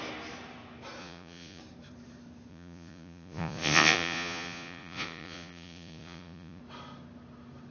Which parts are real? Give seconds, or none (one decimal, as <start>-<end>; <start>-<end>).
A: 0.0-1.0; 1.6-2.5; 6.6-7.7